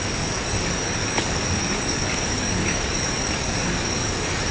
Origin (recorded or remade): remade